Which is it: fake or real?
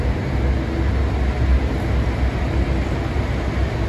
real